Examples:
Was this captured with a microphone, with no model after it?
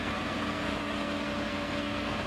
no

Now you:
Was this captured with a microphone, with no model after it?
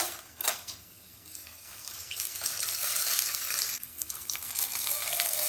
no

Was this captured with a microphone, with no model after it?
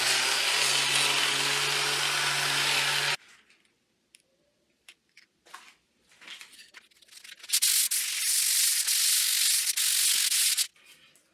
yes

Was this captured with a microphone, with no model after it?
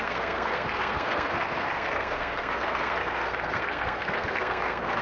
no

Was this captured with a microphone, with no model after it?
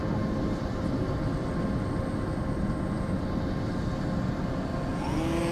yes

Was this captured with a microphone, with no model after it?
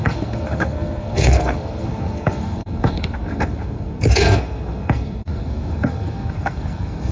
no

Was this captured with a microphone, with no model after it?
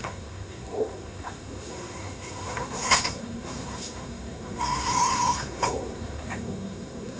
no